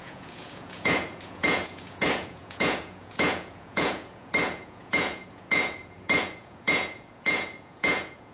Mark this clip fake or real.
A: fake